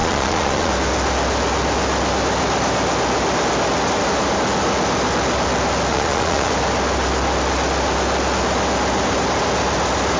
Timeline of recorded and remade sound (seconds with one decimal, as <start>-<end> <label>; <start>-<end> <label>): 0.0-0.7 remade; 0.7-5.9 recorded; 5.9-6.5 remade; 6.5-10.2 recorded